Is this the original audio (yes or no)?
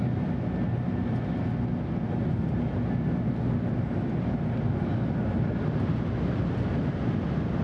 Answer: yes